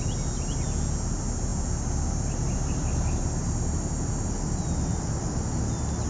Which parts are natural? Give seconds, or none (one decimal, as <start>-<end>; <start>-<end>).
0.0-6.1